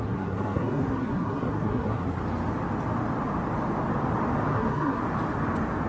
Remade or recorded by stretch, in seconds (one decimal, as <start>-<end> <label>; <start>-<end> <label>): 0.0-2.2 remade; 2.2-4.5 recorded; 4.5-5.0 remade; 5.0-5.9 recorded